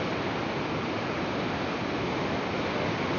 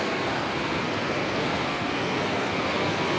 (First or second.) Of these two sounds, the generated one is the second